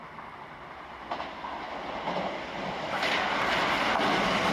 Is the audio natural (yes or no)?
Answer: yes